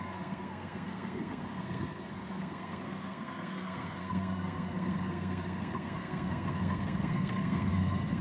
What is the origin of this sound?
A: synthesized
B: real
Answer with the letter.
A